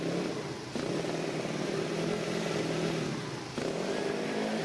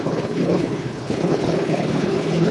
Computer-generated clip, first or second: second